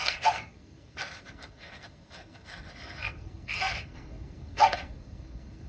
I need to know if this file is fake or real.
fake